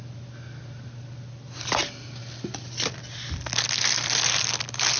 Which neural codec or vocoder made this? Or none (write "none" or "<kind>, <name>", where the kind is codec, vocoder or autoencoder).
none